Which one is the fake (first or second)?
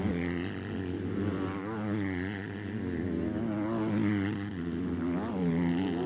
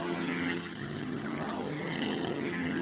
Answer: second